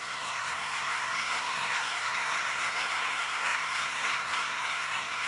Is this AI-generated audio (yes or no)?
yes